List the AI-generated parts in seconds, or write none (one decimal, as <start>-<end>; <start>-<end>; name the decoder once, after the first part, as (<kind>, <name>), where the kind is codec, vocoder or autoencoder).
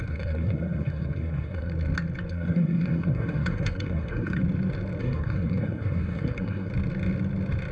0.0-1.7 (codec, SNAC); 2.3-4.4; 5.0-6.7